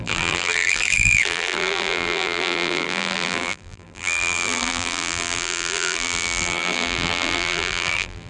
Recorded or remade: remade